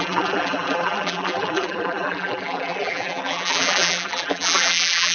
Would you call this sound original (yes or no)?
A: no